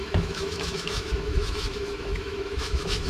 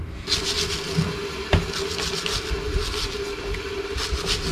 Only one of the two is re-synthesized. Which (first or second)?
first